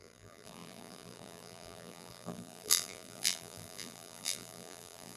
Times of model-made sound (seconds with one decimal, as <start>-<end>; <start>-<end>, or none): 0.0-5.2